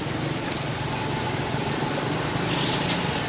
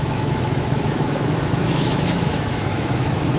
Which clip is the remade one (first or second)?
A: second